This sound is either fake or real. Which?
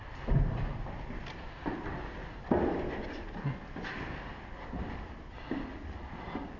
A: real